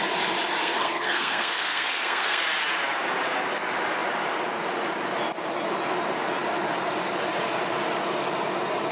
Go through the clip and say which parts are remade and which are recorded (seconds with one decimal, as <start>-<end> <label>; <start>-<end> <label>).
0.0-0.6 recorded; 0.6-2.4 remade; 2.4-8.9 recorded